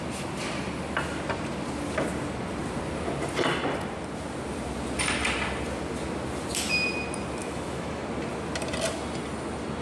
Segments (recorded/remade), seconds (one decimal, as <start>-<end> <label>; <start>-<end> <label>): 0.0-7.4 recorded; 7.4-8.0 remade; 8.0-9.8 recorded